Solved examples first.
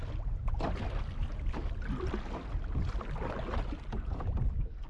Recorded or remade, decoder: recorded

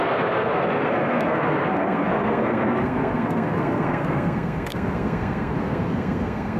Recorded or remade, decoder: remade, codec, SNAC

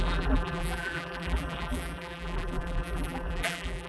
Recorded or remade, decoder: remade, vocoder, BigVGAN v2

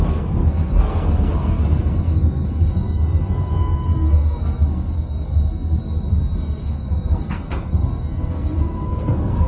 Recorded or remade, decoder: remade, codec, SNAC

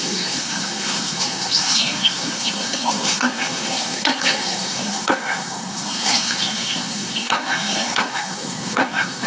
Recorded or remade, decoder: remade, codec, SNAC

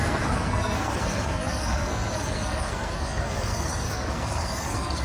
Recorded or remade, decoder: remade, codec, SNAC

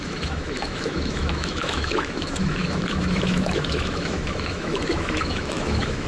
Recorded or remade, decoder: remade, autoencoder, DAC-VAE